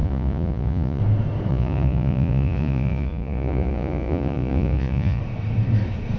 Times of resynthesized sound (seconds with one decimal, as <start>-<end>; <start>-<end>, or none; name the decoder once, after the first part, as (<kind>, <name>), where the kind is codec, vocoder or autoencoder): 0.0-1.0 (vocoder, Vocos); 1.5-5.2